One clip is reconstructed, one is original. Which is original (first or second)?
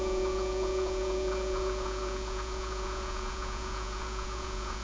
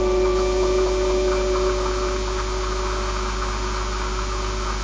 second